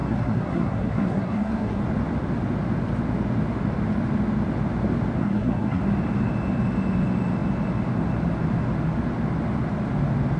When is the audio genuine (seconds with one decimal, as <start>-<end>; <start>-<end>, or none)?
1.8-5.2; 5.8-10.4